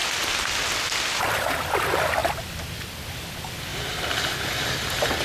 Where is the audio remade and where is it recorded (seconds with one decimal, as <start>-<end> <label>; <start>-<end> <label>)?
0.0-5.2 recorded